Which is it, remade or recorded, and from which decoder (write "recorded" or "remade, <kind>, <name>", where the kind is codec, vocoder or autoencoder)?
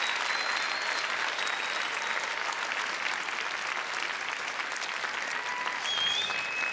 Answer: recorded